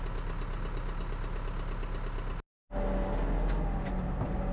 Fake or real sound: real